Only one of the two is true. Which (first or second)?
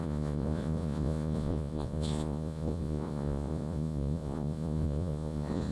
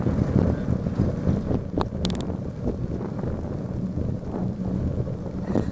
second